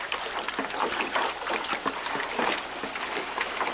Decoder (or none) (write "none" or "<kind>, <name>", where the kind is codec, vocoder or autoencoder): none